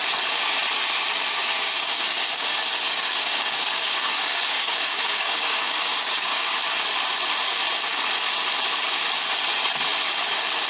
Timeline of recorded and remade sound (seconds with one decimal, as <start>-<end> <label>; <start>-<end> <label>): 0.0-1.4 recorded; 1.4-6.6 remade; 6.6-10.7 recorded